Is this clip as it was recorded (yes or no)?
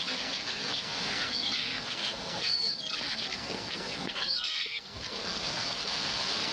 no